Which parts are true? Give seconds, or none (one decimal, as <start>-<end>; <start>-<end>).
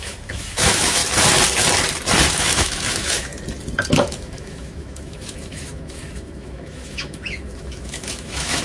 1.0-2.3; 3.3-4.0